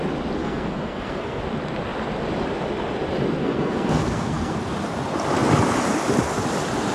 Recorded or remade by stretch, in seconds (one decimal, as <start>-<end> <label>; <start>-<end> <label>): 0.0-0.4 recorded; 0.4-1.4 remade; 1.4-3.4 recorded; 3.4-4.6 remade; 4.6-6.9 recorded